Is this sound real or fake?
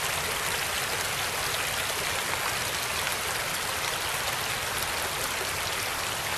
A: real